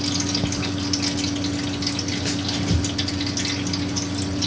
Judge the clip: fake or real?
real